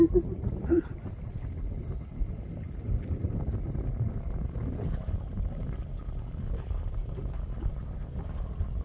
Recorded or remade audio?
recorded